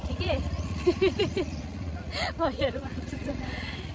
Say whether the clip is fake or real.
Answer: fake